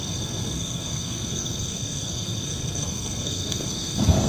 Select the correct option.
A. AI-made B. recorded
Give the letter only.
A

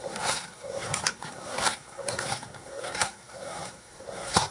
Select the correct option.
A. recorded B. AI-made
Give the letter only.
B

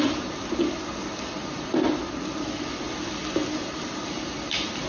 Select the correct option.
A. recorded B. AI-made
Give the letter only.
A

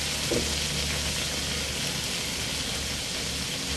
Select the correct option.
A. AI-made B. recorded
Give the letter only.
B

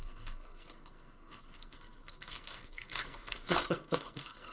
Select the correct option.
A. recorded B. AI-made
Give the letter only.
B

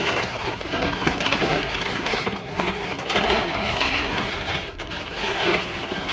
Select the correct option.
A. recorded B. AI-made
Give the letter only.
B